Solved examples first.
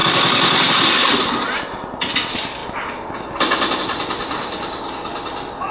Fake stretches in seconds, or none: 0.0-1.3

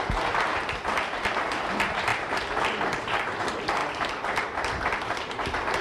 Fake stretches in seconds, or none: 0.5-1.4; 2.1-3.0; 3.8-5.1

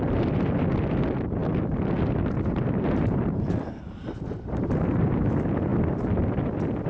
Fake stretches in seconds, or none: 1.4-5.3

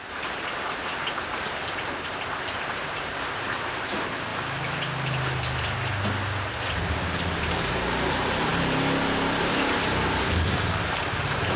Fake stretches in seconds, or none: 0.0-4.3; 6.7-11.6

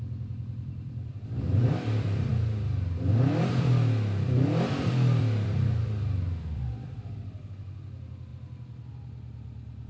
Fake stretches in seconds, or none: 0.0-2.3; 5.2-8.3

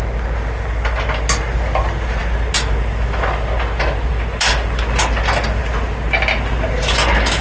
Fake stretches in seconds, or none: none